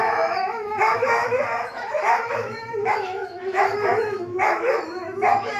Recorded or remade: remade